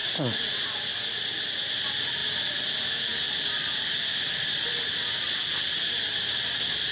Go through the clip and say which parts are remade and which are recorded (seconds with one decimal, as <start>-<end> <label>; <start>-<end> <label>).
0.0-6.9 recorded